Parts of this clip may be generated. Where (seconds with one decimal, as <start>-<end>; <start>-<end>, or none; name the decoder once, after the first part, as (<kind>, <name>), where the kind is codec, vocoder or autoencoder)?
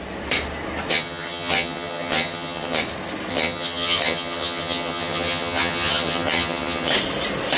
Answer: 0.9-2.8 (vocoder, HiFi-GAN); 3.3-6.9